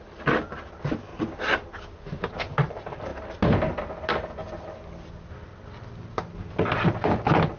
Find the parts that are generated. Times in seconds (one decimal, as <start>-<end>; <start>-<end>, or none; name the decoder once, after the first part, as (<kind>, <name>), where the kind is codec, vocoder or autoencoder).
4.4-5.7 (vocoder, BigVGAN v2)